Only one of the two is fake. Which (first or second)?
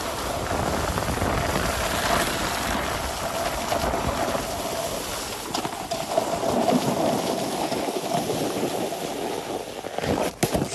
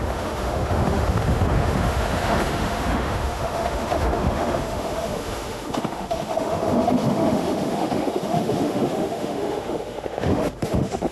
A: second